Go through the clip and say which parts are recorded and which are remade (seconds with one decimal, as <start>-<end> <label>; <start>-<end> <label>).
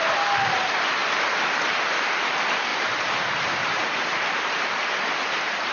0.0-2.7 recorded; 2.7-5.0 remade; 5.0-5.7 recorded